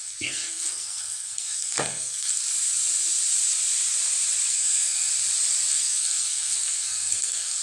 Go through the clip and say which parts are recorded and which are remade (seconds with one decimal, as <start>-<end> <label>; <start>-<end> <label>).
0.0-2.4 remade; 2.4-4.5 recorded; 4.5-5.1 remade; 5.1-5.7 recorded; 5.7-7.6 remade